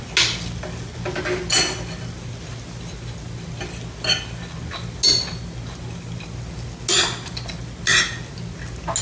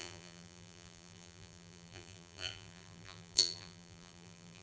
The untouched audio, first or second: first